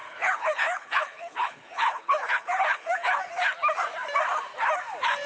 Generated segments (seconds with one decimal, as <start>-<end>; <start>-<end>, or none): 0.0-3.2